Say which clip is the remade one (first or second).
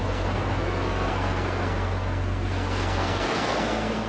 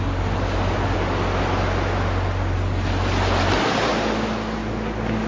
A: first